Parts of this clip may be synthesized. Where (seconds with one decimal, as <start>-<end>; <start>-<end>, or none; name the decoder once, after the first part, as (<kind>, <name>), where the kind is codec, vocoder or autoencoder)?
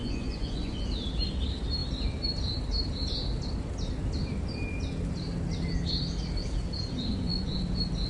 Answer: 0.0-0.8 (vocoder, Vocos); 7.1-7.6